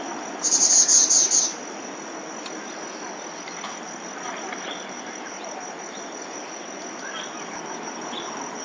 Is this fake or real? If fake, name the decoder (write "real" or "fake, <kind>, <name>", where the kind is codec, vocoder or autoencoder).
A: real